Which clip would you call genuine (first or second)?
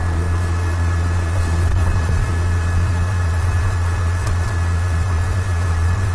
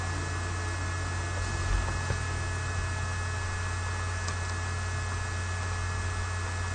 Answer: second